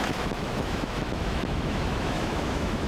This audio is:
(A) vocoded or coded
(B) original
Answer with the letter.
A